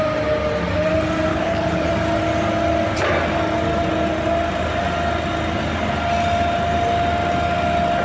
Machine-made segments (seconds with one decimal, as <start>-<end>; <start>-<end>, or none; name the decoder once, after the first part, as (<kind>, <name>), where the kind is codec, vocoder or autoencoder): 1.3-1.9 (codec, HILCodec)